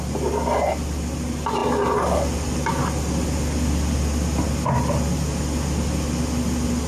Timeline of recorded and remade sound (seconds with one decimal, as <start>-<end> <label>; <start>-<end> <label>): 0.0-6.9 recorded